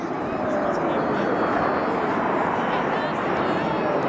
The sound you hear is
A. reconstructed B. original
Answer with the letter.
B